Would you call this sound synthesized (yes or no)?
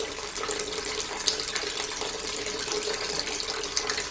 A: yes